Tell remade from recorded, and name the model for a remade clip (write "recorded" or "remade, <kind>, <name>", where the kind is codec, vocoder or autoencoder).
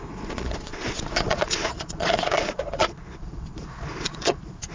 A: remade, vocoder, Vocos